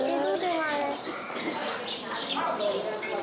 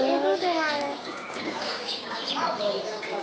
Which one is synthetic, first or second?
second